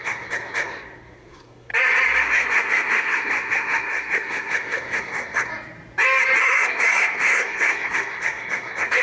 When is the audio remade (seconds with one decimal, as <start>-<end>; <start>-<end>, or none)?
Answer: 0.0-1.7; 2.2-5.5; 6.4-9.0